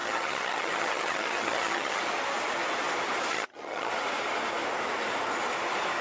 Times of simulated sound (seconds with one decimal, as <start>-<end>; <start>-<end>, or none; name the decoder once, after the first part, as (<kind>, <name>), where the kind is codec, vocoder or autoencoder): 0.0-2.0 (vocoder, HiFi-GAN); 3.3-3.9